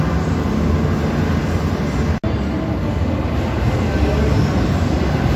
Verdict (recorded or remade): recorded